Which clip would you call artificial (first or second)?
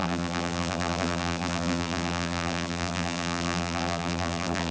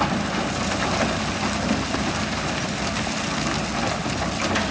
first